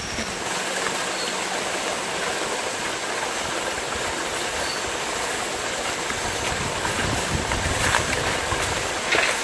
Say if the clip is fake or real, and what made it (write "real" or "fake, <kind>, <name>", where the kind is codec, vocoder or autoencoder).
real